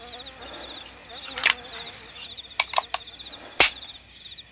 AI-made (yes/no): no